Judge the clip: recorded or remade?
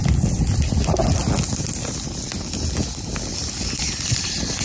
recorded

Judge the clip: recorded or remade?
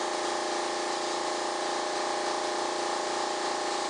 recorded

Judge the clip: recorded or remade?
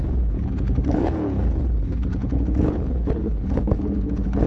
remade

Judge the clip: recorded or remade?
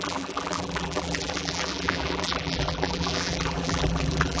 remade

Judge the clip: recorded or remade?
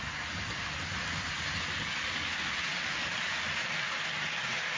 recorded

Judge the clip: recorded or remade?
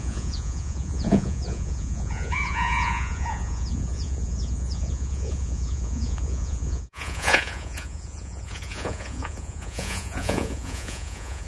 remade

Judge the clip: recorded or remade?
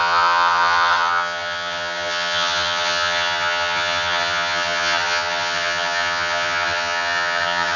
remade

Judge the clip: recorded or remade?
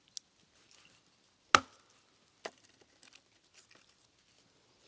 recorded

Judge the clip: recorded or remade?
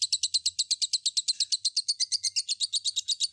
recorded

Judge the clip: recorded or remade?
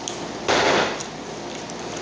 recorded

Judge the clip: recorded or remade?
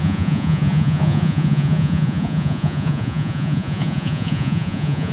remade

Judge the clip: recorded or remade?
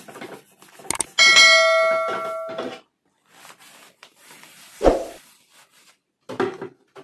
recorded